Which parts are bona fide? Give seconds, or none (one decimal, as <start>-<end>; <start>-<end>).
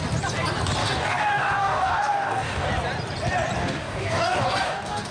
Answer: 0.0-0.8; 2.7-3.6